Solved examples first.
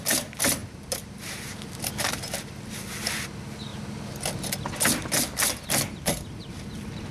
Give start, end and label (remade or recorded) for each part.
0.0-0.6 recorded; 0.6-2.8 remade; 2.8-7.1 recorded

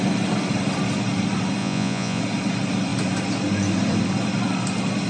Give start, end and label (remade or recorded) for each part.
0.0-1.6 recorded; 1.6-2.2 remade; 2.2-5.1 recorded

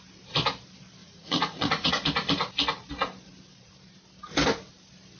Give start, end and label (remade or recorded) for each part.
0.0-1.0 recorded; 1.0-1.9 remade; 1.9-5.2 recorded

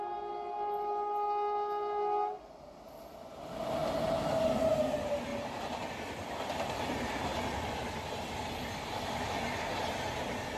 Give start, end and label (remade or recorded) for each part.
0.0-5.3 recorded; 5.3-5.9 remade; 5.9-7.3 recorded; 7.3-8.1 remade; 8.1-10.6 recorded

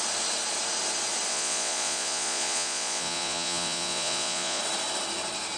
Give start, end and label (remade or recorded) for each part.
0.0-1.3 recorded; 1.3-4.6 remade; 4.6-5.6 recorded

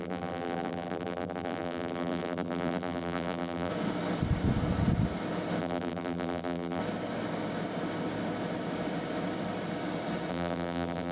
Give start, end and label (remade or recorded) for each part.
0.0-3.7 remade; 3.7-5.6 recorded; 5.6-6.8 remade; 6.8-10.3 recorded; 10.3-11.1 remade